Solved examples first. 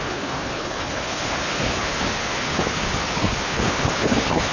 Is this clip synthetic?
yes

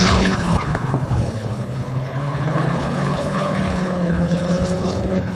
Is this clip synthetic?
yes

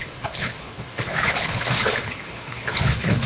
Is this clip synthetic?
yes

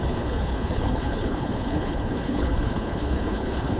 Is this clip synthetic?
yes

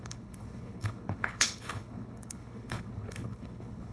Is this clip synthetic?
yes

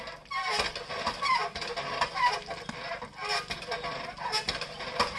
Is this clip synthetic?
no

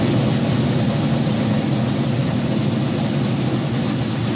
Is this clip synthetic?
no